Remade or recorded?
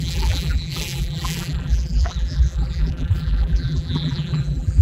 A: remade